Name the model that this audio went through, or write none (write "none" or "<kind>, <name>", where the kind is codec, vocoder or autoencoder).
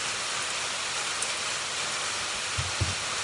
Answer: none